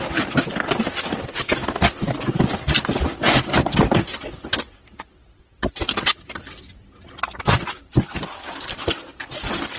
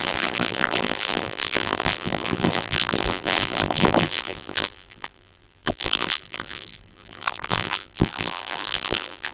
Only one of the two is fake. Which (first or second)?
second